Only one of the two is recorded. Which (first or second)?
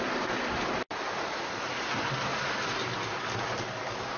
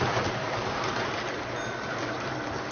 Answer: first